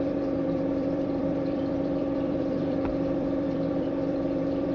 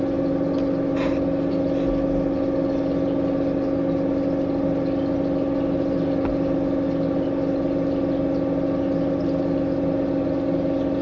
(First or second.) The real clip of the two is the second